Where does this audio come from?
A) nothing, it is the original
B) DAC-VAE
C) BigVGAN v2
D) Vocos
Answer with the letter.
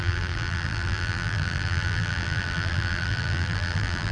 C